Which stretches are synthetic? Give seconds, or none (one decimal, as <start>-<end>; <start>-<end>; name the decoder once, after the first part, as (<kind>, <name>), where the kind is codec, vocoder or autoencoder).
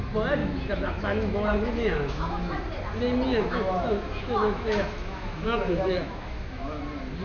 0.4-2.6 (autoencoder, DAC-VAE); 3.3-6.8